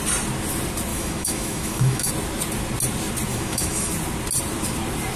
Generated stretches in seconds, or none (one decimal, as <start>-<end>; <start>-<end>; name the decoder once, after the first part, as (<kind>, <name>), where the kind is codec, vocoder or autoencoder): 0.9-2.1 (autoencoder, DAC-VAE); 3.3-3.9